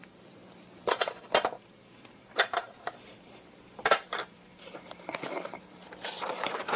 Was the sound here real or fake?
fake